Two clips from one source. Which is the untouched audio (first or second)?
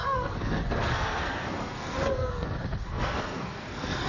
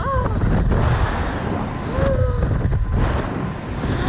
second